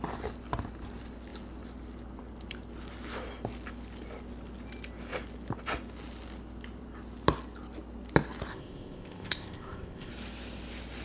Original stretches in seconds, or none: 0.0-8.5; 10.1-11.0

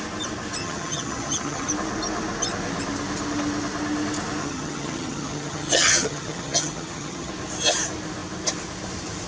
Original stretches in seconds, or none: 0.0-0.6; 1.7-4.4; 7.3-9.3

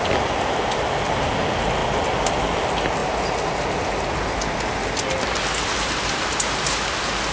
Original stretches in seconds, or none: 0.0-7.3